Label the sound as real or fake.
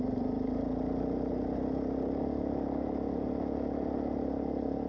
real